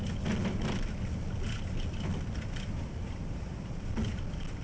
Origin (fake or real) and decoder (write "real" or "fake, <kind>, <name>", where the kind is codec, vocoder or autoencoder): real